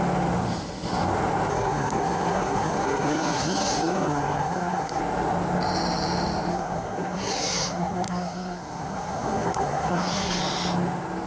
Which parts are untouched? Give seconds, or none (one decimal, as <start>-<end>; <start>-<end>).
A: 0.0-1.5; 5.0-6.5; 10.4-11.3

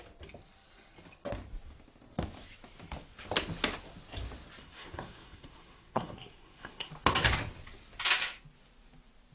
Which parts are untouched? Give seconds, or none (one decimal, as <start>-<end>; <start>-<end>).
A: 0.0-4.6; 6.9-9.3

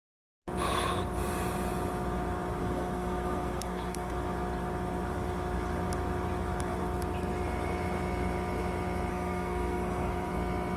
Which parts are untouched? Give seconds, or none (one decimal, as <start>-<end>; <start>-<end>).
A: 0.0-2.6; 4.1-9.1; 10.3-10.8